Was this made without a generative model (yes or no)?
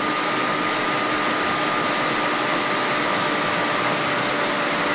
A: yes